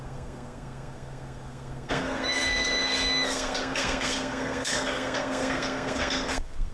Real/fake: fake